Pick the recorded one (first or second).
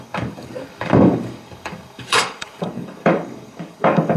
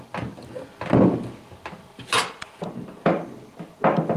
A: second